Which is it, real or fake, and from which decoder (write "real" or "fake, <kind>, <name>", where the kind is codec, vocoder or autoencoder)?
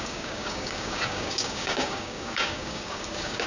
fake, codec, DAC